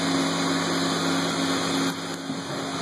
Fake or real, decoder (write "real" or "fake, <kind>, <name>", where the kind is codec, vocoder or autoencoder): real